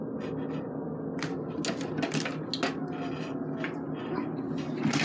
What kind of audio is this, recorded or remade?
recorded